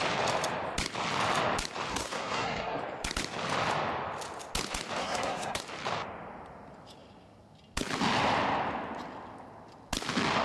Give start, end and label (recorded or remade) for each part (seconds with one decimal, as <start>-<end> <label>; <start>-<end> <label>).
0.0-1.9 recorded; 1.9-2.8 remade; 2.8-5.0 recorded; 5.0-5.6 remade; 5.6-10.4 recorded